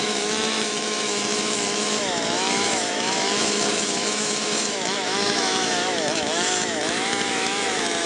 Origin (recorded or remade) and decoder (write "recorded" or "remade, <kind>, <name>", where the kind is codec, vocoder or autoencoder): remade, autoencoder, DAC-VAE